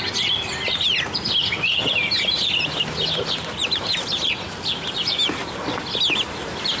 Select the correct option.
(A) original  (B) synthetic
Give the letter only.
A